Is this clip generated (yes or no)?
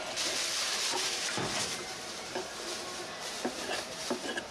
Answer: yes